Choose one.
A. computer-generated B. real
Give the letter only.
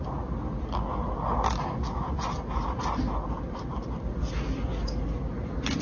B